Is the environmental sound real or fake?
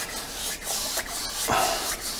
real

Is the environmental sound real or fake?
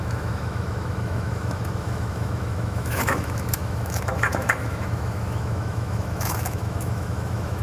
fake